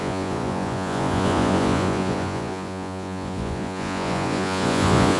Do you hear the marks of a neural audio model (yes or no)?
yes